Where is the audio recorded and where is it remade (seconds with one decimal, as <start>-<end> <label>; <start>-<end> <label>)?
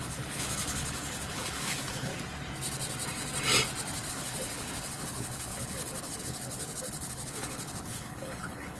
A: 0.0-2.1 remade; 2.1-4.1 recorded; 4.1-8.8 remade